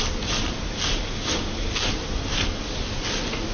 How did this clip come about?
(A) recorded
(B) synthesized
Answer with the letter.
A